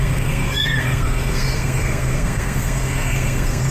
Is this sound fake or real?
fake